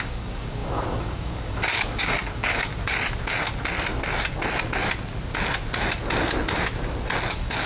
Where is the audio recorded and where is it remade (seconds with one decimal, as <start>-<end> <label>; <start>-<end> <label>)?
0.0-2.7 remade; 2.7-7.3 recorded; 7.3-7.7 remade